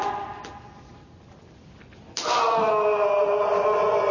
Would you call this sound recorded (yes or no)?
yes